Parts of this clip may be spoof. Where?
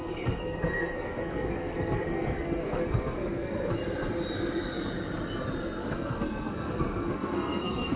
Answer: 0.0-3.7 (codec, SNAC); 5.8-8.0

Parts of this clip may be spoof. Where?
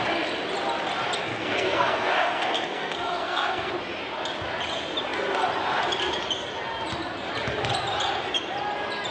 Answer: 1.3-3.7 (codec, SNAC)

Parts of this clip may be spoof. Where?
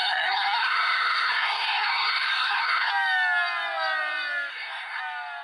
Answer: 0.0-2.9 (codec, SNAC); 4.5-5.0